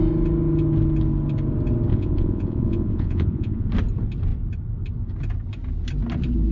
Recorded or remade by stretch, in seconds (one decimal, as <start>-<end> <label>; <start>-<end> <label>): 0.0-1.9 recorded; 1.9-3.7 remade; 3.7-6.5 recorded